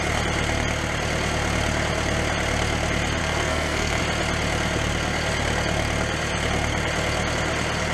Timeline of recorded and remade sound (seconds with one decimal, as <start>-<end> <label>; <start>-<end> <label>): 0.0-3.2 recorded; 3.2-4.0 remade; 4.0-7.9 recorded